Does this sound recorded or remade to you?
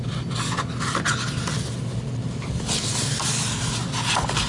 recorded